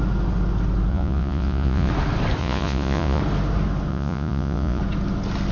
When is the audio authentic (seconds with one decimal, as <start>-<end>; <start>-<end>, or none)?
0.0-0.9; 1.9-2.4; 3.2-3.9; 4.8-5.5